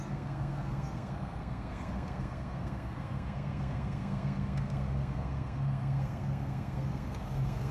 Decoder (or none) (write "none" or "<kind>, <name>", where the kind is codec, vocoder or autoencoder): codec, SNAC